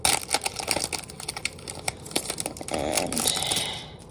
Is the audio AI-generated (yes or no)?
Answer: no